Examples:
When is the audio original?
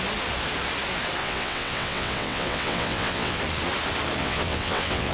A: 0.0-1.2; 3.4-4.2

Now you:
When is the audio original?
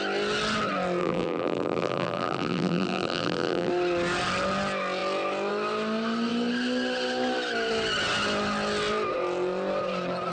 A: 0.0-1.0; 3.7-10.3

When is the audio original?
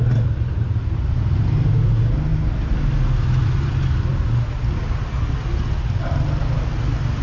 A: 0.0-7.2